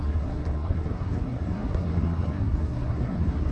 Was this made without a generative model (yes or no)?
no